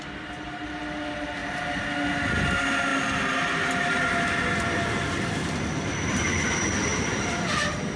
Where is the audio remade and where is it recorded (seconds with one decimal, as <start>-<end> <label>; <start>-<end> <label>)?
0.0-8.0 recorded